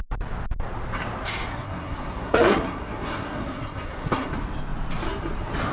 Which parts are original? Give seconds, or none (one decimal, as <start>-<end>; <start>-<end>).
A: 0.0-1.5; 4.3-5.7

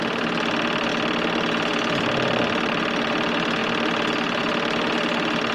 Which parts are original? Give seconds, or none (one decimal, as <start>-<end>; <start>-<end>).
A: 0.0-5.5

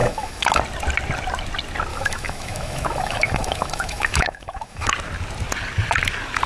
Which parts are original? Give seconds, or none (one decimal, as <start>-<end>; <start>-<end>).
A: 0.6-1.9; 4.9-6.5

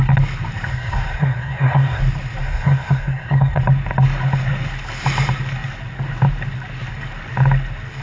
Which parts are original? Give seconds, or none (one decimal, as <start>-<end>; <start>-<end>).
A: 0.0-0.7; 2.0-2.4; 3.6-8.0

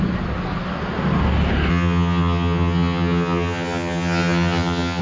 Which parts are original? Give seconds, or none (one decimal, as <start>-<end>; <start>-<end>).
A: 0.0-1.7